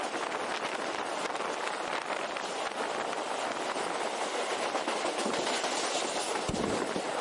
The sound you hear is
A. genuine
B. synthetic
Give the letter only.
A